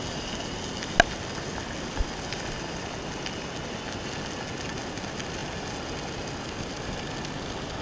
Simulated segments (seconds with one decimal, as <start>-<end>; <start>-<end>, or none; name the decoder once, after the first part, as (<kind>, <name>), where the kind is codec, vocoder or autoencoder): none